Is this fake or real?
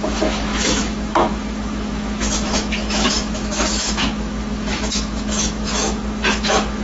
fake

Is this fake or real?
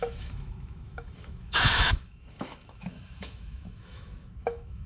fake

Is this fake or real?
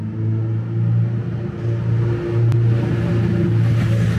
real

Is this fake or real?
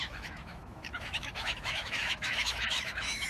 fake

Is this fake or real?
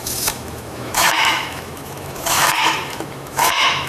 fake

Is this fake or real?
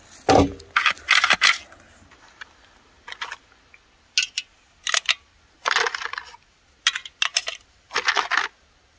real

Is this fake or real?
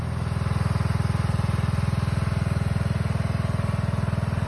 real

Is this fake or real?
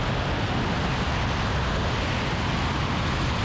real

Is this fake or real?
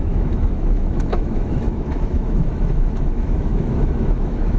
fake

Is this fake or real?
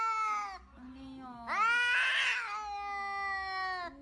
real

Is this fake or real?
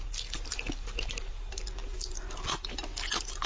real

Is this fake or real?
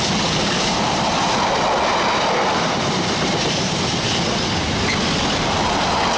real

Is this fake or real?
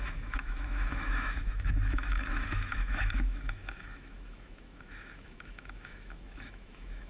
fake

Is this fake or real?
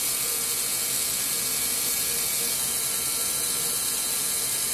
real